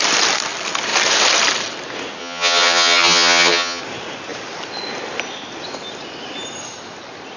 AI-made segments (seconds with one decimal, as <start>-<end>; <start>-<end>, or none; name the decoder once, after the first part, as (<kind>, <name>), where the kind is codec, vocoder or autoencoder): 2.2-3.8 (vocoder, HiFi-GAN)